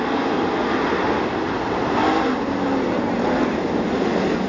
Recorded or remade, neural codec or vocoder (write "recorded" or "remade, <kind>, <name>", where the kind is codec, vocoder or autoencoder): recorded